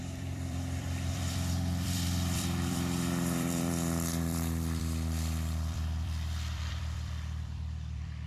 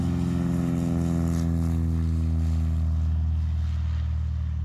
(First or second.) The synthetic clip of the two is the first